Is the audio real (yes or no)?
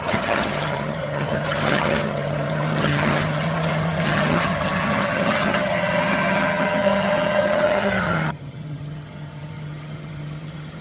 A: no